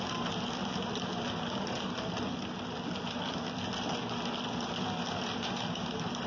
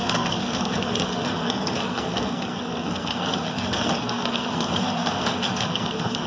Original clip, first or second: first